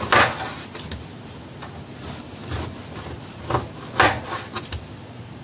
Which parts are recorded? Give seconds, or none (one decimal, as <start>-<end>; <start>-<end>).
0.0-5.4